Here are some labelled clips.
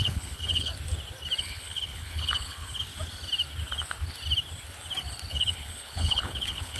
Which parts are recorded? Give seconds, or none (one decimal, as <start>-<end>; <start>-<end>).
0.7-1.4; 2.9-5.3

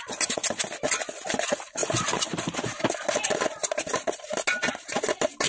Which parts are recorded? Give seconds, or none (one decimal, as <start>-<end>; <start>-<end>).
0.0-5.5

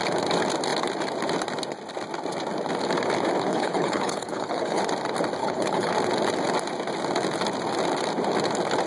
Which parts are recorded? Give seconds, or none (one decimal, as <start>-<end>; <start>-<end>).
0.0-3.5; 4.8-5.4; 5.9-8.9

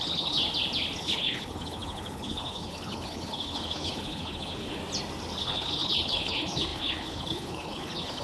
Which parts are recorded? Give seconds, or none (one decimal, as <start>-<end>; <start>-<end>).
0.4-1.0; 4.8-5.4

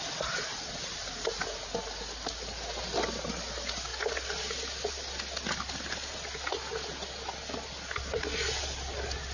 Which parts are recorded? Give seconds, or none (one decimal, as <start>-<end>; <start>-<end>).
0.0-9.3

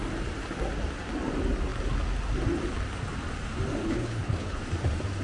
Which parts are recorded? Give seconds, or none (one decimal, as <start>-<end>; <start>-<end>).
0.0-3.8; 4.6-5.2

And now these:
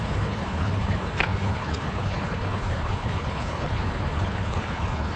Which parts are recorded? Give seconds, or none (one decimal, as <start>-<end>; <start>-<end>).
none